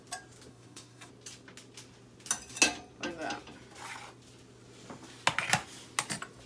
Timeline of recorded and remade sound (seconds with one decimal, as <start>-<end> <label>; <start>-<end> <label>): 0.0-0.5 recorded; 0.5-1.1 remade; 1.1-6.5 recorded